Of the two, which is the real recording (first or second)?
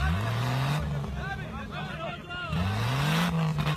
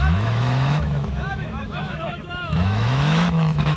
first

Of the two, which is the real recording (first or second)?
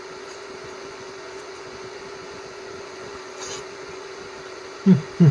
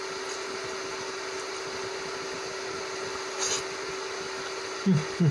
second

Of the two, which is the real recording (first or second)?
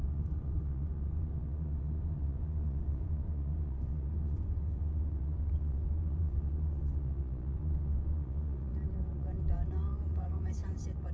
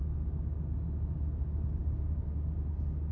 second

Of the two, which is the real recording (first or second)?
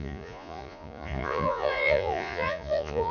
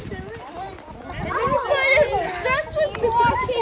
second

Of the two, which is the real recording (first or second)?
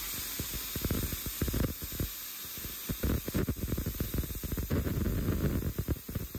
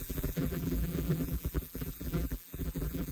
first